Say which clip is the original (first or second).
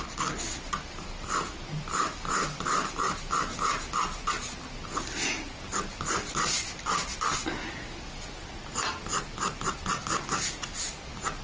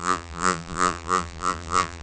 first